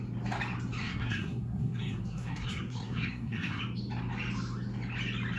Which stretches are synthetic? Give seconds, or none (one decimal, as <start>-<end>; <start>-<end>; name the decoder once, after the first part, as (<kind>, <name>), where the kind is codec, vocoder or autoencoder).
0.8-3.6 (codec, SNAC)